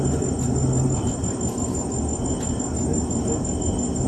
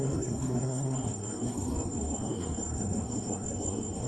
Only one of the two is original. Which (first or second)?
first